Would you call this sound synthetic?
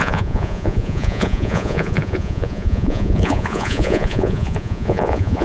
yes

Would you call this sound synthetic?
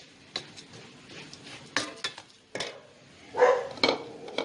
no